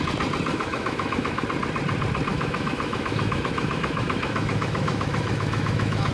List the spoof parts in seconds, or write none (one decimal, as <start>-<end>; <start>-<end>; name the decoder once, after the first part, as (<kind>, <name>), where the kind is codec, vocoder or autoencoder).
0.5-1.4 (autoencoder, DAC-VAE); 2.3-6.1